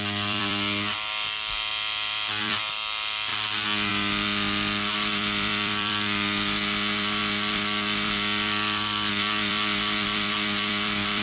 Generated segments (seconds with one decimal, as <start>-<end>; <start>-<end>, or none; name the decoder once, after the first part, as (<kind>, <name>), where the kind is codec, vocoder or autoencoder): 0.0-3.3 (vocoder, BigVGAN v2); 3.9-11.2